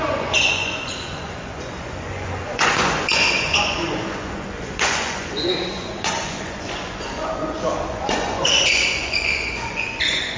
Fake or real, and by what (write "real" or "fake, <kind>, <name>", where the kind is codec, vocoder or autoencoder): fake, vocoder, Vocos